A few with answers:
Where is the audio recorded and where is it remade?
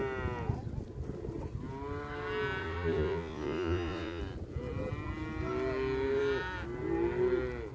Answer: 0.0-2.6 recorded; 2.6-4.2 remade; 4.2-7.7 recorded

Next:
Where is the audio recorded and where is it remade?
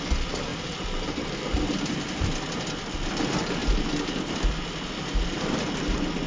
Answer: 0.0-0.5 recorded; 0.5-1.7 remade; 1.7-6.3 recorded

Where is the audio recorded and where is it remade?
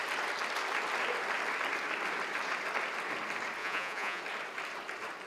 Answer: 0.0-3.6 recorded; 3.6-4.2 remade; 4.2-5.3 recorded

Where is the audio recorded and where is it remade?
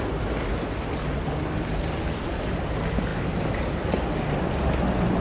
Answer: 0.0-5.2 recorded